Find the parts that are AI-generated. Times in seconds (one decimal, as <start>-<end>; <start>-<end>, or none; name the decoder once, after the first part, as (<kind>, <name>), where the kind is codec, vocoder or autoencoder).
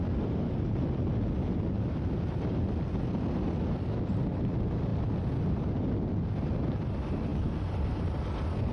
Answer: 7.3-8.1 (vocoder, BigVGAN v2)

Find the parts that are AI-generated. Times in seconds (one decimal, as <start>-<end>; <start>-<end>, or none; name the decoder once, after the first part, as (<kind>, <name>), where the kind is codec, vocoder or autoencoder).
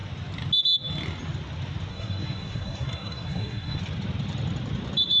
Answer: 1.9-3.8 (codec, SNAC)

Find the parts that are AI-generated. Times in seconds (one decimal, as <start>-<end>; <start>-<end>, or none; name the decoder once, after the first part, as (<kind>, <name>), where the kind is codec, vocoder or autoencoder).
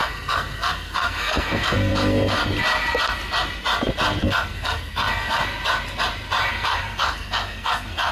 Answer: 0.0-2.4 (codec, SNAC); 4.2-5.4; 6.5-8.1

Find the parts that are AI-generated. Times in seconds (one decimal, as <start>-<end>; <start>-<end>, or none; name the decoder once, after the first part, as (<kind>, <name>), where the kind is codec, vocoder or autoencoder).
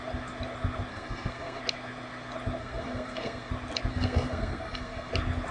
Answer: 0.9-1.6 (codec, SNAC); 2.6-3.5; 3.9-5.1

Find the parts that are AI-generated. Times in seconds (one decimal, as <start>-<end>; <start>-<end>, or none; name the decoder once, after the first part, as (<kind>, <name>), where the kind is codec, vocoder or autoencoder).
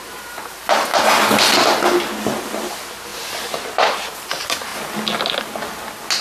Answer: 0.0-0.9 (vocoder, BigVGAN v2); 2.7-4.7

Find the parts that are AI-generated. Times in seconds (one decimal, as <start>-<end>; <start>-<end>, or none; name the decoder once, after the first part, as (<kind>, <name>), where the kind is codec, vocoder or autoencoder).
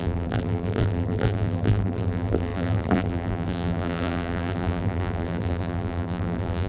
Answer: 0.0-6.7 (vocoder, BigVGAN v2)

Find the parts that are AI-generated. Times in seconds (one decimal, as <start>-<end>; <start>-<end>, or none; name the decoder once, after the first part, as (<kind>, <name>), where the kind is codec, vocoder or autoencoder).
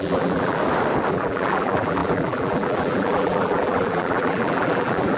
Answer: 0.0-0.6 (vocoder, BigVGAN v2); 1.1-5.2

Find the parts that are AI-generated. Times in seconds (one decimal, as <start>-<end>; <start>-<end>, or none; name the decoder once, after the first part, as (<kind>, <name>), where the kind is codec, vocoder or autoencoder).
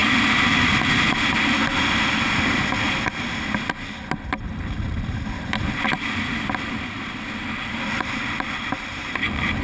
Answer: none